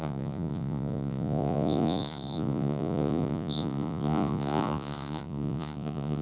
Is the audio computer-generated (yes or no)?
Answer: yes